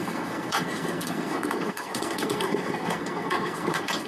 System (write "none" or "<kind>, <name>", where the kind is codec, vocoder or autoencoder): codec, SNAC